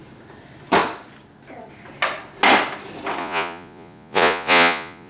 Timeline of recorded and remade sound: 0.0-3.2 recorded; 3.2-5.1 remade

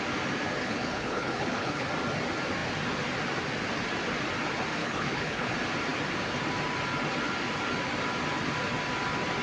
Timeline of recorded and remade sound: 0.0-0.6 recorded; 0.6-1.9 remade; 1.9-4.8 recorded; 4.8-5.5 remade; 5.5-9.4 recorded

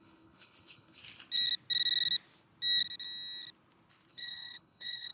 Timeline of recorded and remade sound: 0.0-1.0 remade; 1.0-4.1 recorded; 4.1-5.1 remade

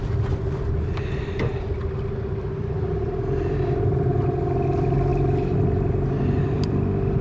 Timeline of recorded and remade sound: 0.0-7.2 recorded

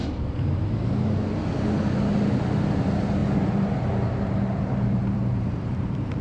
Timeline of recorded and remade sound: 0.0-3.2 recorded; 3.2-6.2 remade